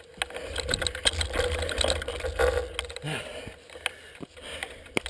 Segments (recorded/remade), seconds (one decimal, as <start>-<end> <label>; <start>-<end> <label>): 0.0-5.1 recorded